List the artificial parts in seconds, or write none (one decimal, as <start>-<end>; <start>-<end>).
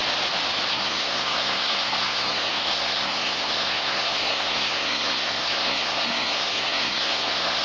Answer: 0.7-7.6